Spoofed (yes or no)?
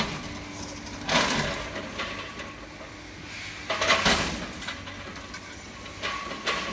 no